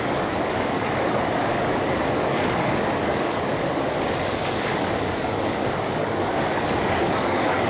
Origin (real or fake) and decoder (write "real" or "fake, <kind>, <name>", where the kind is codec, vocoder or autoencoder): fake, codec, DAC